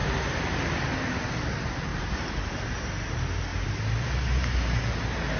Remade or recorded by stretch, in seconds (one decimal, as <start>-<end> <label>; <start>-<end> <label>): 0.0-0.8 remade; 0.8-1.9 recorded; 1.9-2.5 remade; 2.5-3.5 recorded; 3.5-4.8 remade; 4.8-5.4 recorded

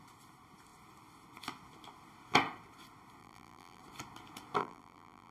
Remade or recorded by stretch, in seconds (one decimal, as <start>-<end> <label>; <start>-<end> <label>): 0.0-3.2 recorded; 3.2-3.8 remade; 3.8-4.6 recorded; 4.6-5.3 remade

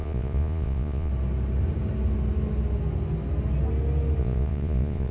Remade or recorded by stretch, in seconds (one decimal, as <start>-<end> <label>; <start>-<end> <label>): 0.0-1.1 remade; 1.1-4.2 recorded; 4.2-5.1 remade

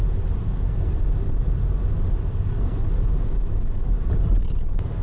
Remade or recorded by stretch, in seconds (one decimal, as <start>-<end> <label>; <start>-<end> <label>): 0.0-0.4 recorded; 0.4-0.9 remade; 0.9-2.3 recorded; 2.3-2.8 remade; 2.8-5.0 recorded